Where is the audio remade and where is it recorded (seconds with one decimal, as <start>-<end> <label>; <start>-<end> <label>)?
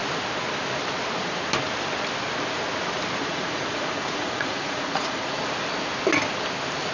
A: 0.0-3.2 recorded; 3.2-5.4 remade; 5.4-6.9 recorded